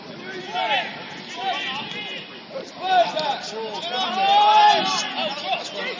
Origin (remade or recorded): recorded